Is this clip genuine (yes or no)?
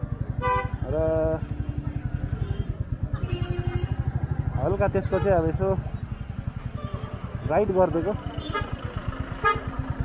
yes